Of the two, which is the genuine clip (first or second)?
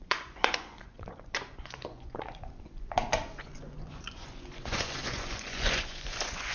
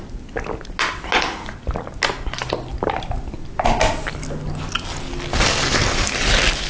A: second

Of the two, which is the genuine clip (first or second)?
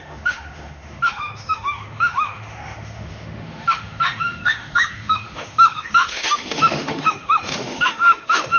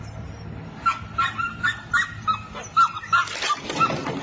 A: second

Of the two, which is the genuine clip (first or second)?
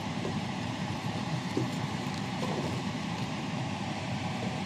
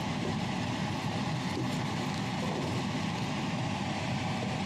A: second